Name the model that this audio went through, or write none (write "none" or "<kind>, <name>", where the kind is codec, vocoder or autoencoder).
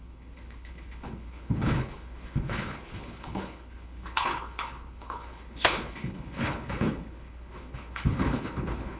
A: codec, HILCodec